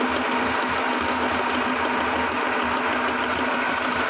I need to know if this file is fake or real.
real